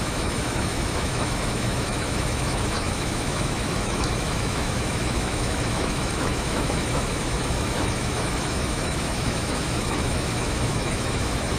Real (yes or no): no